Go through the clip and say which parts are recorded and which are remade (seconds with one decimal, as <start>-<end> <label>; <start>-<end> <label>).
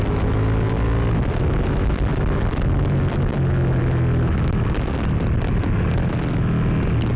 0.0-7.2 recorded